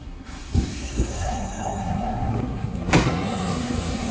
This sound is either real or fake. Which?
fake